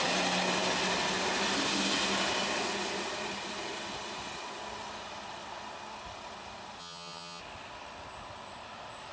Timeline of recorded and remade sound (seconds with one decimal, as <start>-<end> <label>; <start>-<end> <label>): 0.0-6.8 recorded; 6.8-7.4 remade; 7.4-9.1 recorded